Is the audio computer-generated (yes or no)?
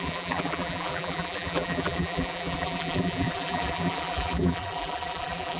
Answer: yes